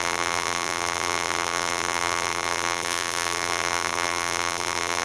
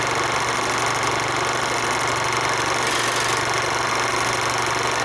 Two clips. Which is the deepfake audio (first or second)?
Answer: first